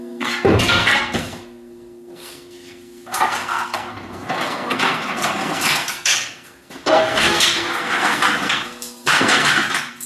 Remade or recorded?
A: remade